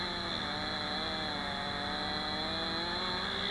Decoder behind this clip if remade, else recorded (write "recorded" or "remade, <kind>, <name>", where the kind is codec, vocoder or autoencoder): recorded